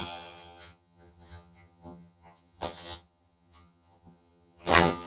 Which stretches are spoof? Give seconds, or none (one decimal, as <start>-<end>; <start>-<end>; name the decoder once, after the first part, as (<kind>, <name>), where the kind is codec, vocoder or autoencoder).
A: 0.0-5.1 (vocoder, HiFi-GAN)